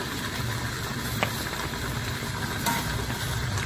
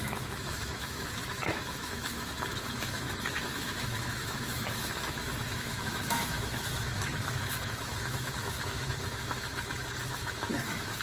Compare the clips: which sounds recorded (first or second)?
first